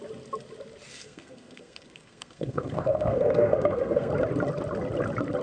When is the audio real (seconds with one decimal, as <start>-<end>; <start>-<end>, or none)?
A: 0.0-0.9; 4.1-5.4